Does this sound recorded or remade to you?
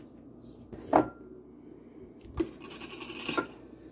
recorded